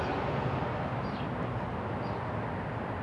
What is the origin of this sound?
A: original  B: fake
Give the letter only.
A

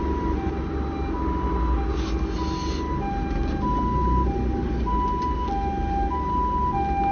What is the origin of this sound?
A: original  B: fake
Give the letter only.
A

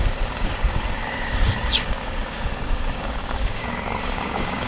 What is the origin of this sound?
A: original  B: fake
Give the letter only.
B